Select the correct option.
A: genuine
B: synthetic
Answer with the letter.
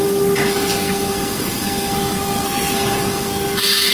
B